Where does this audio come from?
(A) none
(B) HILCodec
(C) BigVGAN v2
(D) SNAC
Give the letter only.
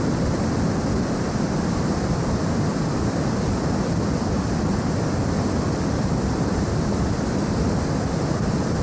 A